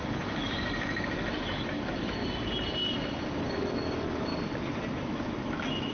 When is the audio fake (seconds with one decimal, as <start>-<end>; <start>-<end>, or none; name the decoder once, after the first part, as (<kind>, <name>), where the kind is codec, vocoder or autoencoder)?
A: 0.0-2.2 (autoencoder, DAC-VAE); 3.5-4.3; 5.0-5.9